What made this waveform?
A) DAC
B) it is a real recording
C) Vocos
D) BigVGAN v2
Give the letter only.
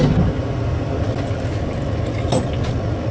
B